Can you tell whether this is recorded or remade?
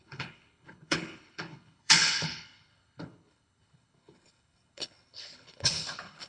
remade